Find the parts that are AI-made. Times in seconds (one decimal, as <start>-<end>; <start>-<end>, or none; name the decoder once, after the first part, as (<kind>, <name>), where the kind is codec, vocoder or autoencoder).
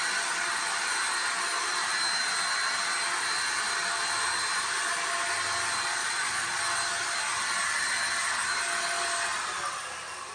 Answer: 6.0-6.6 (vocoder, Vocos)